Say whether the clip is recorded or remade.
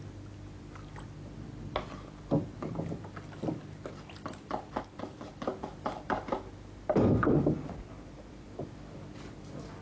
recorded